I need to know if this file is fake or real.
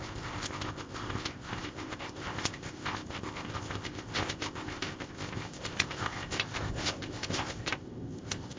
fake